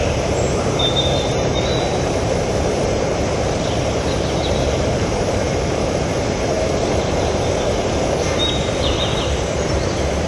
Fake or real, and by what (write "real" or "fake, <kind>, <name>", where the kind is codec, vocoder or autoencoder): fake, vocoder, BigVGAN v2